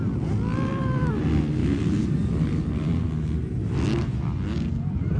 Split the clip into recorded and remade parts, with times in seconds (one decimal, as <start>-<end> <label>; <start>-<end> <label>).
0.0-0.7 recorded; 0.7-1.2 remade; 1.2-1.6 recorded; 1.6-3.0 remade; 3.0-5.2 recorded